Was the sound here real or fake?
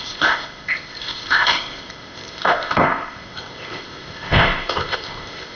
fake